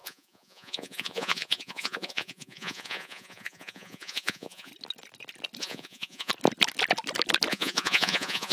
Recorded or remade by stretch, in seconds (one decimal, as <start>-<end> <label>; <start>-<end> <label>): 0.0-4.7 remade; 4.7-5.6 recorded; 5.6-6.3 remade; 6.3-7.5 recorded; 7.5-8.5 remade

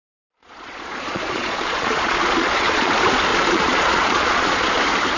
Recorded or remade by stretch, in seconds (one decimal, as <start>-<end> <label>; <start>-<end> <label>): 0.0-0.4 recorded; 0.4-2.9 remade; 2.9-3.3 recorded; 3.3-4.8 remade; 4.8-5.2 recorded

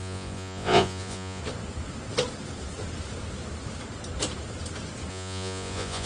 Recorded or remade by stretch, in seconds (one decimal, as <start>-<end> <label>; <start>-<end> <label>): 0.0-1.4 remade; 1.4-5.1 recorded; 5.1-6.1 remade

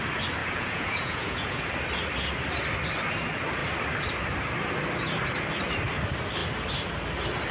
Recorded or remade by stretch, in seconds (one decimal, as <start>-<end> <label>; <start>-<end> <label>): 0.0-0.4 recorded; 0.4-1.6 remade; 1.6-7.5 recorded

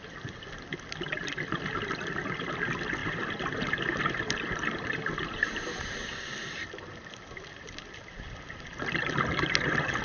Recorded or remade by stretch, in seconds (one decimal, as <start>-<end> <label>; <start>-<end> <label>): 0.0-10.0 recorded